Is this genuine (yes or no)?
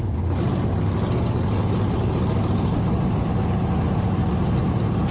yes